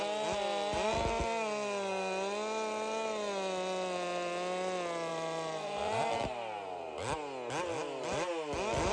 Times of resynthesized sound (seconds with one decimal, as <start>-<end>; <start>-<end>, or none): 5.1-6.1